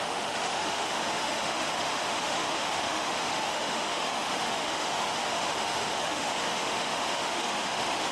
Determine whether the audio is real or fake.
fake